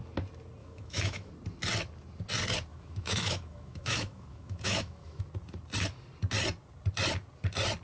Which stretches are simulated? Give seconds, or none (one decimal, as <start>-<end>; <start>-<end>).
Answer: 0.6-1.3; 2.7-5.2